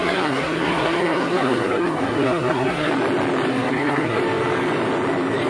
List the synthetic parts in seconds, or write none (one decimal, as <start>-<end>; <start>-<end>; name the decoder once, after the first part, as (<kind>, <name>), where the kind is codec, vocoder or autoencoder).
0.0-2.9 (codec, SNAC); 3.5-4.2